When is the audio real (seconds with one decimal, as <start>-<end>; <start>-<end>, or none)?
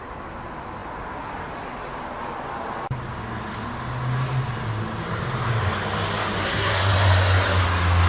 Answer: 0.0-6.4; 6.9-8.1